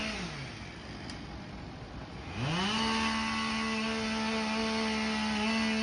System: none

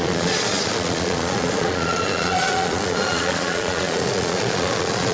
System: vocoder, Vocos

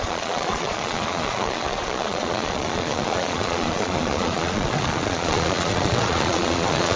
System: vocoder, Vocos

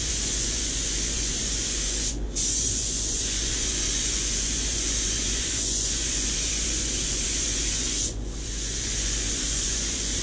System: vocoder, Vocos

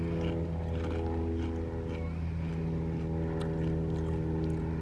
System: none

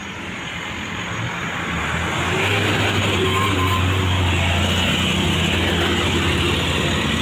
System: none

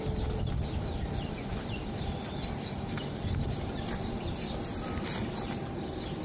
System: none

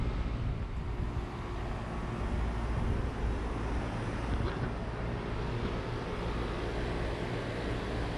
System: none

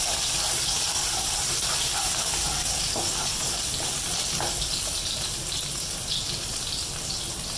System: none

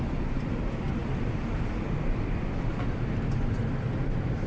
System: none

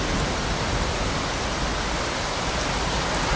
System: none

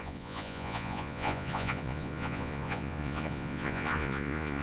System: vocoder, Vocos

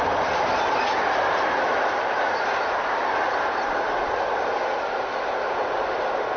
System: none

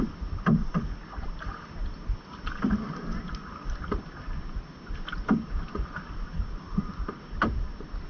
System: none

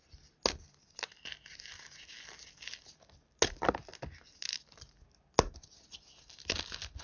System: none